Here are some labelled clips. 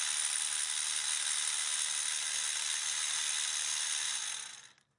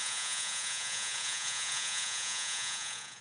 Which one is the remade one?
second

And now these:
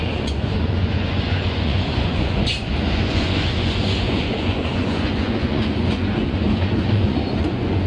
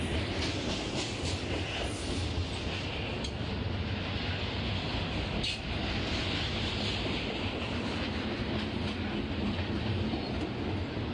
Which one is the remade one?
first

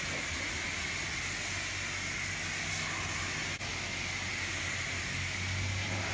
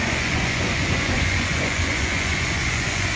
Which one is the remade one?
second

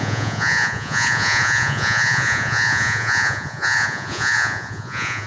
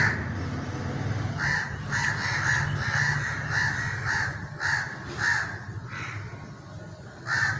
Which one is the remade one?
first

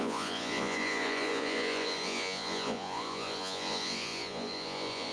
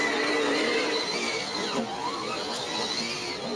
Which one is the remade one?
first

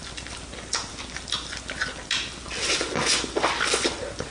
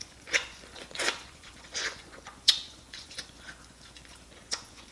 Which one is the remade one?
second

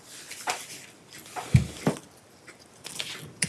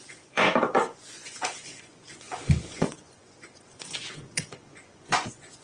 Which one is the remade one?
second